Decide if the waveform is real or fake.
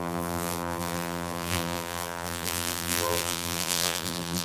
fake